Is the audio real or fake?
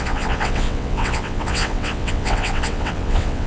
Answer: fake